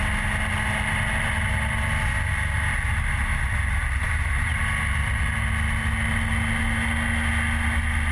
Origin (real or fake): real